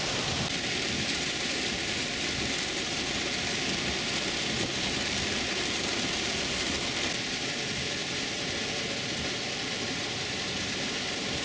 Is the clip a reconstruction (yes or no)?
yes